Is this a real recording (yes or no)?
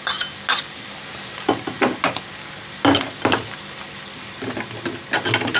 yes